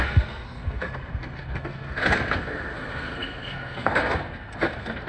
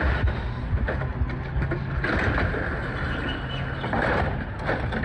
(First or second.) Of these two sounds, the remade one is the first